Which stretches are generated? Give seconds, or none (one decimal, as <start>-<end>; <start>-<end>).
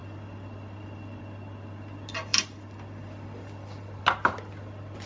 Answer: 0.0-1.2; 2.3-4.0